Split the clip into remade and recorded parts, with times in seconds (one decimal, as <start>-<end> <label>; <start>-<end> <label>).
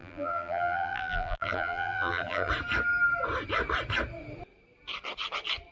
0.0-2.5 remade; 2.5-5.7 recorded